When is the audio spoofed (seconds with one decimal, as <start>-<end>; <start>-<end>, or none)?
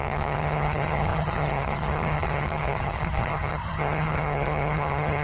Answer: 0.0-5.2